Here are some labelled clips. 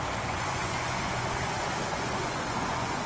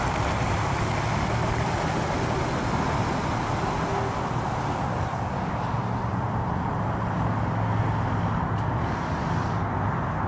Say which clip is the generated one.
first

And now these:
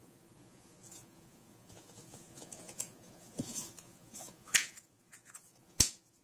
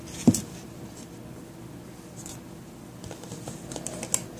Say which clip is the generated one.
first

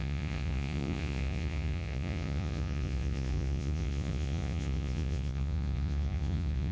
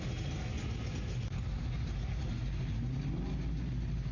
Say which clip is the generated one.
first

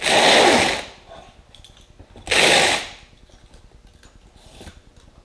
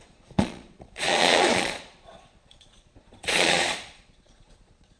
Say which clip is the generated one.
second